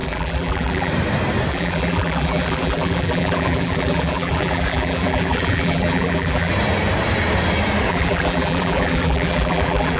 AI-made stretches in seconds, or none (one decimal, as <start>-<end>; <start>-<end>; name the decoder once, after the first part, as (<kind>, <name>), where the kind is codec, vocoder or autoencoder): 0.0-0.9 (vocoder, BigVGAN v2); 1.5-6.5; 7.9-10.0